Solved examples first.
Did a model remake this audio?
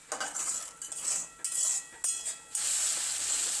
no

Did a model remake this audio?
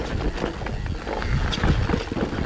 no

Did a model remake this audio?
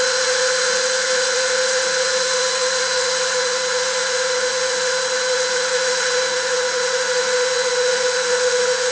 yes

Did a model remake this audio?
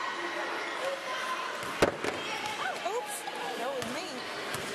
no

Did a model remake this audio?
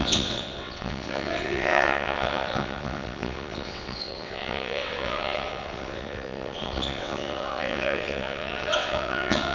yes